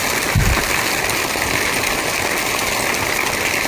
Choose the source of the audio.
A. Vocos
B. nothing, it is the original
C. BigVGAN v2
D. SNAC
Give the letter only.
B